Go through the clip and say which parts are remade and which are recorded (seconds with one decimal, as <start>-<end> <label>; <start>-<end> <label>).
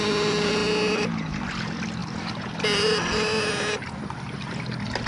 0.0-5.1 recorded